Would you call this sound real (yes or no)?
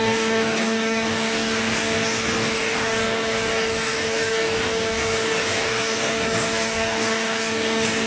no